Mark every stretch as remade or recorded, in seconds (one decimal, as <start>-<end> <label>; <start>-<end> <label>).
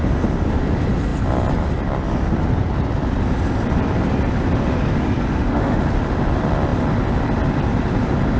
0.0-5.3 recorded; 5.3-5.8 remade; 5.8-8.4 recorded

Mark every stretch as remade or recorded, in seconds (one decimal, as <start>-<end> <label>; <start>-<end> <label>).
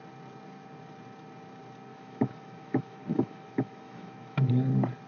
0.0-1.9 recorded; 1.9-4.5 remade; 4.5-5.1 recorded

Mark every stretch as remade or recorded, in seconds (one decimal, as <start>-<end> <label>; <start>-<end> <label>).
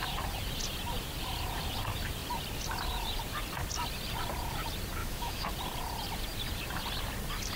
0.0-5.0 recorded; 5.0-5.5 remade; 5.5-7.6 recorded